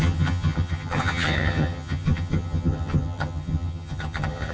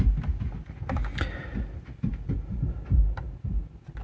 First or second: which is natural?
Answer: second